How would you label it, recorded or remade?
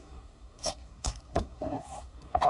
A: remade